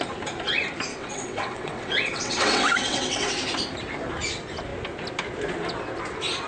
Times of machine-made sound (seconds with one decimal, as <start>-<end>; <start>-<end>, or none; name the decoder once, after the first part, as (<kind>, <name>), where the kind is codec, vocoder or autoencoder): 0.9-3.3 (vocoder, WaveNeXt)